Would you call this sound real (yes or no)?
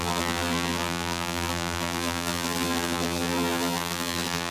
no